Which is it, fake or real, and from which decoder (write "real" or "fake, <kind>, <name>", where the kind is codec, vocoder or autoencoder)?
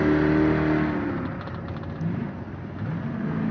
real